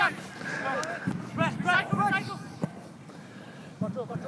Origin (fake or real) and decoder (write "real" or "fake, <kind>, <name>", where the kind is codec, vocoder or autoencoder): fake, vocoder, BigVGAN v2